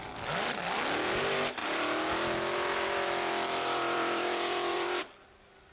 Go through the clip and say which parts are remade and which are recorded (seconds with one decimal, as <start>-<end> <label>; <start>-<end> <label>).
0.0-1.6 recorded; 1.6-5.0 remade; 5.0-5.7 recorded